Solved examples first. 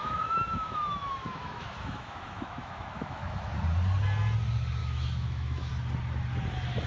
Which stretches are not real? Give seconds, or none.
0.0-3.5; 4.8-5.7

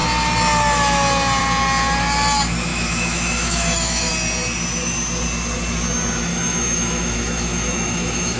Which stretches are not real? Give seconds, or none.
2.7-4.1; 6.3-8.4

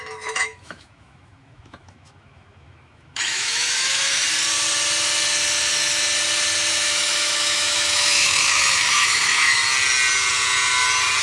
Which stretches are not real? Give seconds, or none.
0.0-4.2; 6.7-9.6